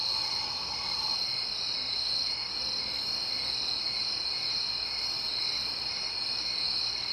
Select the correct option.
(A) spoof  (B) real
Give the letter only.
B